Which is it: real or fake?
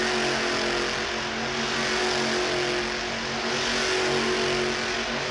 real